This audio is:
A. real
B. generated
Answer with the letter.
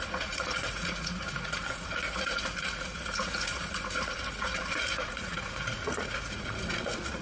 B